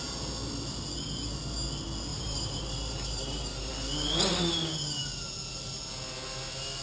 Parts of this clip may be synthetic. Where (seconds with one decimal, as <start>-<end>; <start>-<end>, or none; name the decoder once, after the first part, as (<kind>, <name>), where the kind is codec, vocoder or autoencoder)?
2.1-3.7 (vocoder, BigVGAN v2)